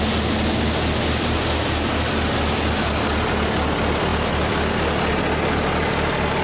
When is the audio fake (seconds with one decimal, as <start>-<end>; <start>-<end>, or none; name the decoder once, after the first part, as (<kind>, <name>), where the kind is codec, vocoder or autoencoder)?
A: none